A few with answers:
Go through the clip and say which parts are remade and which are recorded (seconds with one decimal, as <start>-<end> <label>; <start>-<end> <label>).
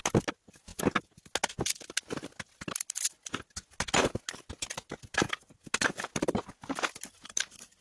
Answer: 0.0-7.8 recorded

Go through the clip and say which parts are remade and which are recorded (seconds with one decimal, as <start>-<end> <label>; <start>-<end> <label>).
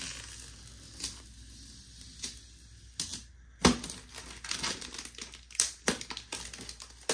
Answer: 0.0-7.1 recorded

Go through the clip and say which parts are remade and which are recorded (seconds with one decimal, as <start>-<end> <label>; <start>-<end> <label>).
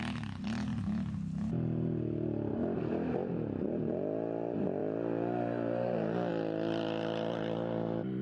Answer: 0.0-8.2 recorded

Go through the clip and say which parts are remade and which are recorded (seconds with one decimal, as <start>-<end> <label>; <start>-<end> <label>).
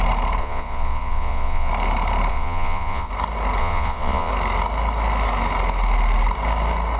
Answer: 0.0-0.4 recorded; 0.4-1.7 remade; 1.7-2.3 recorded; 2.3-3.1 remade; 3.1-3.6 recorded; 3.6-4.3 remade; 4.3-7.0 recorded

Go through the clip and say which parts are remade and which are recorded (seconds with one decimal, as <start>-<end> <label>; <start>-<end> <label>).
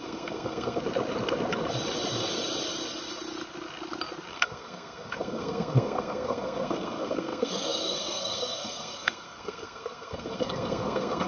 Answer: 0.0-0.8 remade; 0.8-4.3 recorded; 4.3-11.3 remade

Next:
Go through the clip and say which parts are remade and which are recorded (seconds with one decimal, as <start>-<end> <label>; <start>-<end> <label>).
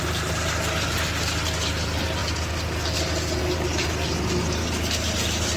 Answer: 0.0-5.6 recorded